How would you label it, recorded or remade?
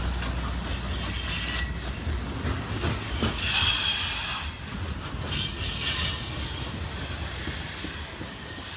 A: recorded